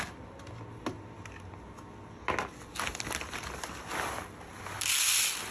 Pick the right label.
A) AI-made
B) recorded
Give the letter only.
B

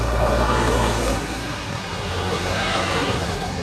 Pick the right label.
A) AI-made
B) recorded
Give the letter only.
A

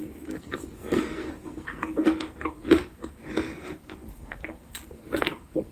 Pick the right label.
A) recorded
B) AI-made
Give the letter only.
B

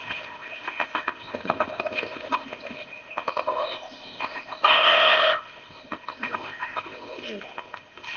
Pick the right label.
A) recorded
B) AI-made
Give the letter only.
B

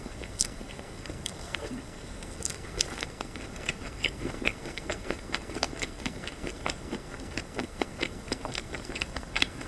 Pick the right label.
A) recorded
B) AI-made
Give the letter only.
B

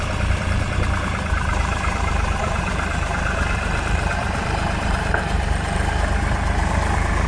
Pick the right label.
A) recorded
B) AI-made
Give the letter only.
B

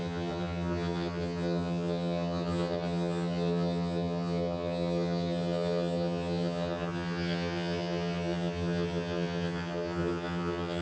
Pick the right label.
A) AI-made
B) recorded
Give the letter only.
A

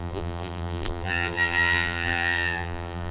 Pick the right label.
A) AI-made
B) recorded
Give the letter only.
A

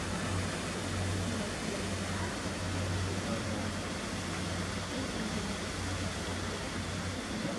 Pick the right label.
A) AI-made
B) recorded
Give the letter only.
B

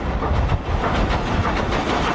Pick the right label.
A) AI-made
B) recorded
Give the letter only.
B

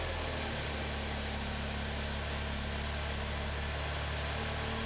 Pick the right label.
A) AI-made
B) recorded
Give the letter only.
B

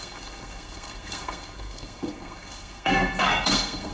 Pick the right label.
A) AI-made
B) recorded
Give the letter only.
A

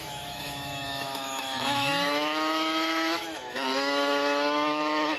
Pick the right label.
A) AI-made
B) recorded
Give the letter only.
A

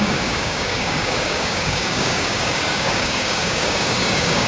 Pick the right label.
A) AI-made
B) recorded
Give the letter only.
A